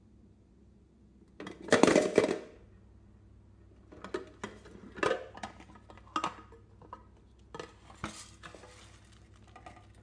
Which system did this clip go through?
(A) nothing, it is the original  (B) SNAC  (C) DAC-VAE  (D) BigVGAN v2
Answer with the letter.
A